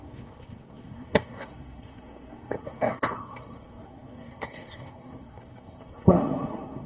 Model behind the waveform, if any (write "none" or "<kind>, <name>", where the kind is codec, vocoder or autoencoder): codec, SNAC